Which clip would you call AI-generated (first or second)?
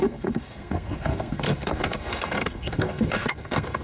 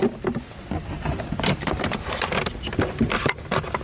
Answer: first